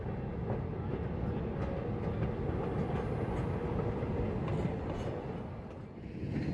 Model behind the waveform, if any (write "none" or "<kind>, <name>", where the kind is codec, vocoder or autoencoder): none